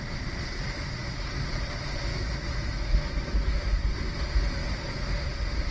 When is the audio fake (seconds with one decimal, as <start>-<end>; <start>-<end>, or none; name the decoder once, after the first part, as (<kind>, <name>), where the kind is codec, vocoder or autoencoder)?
2.1-3.8 (autoencoder, DAC-VAE)